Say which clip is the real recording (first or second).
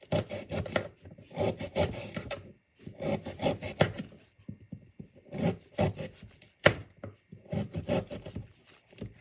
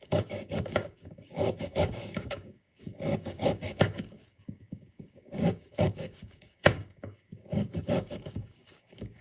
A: first